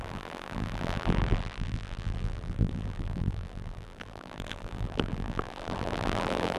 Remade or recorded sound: remade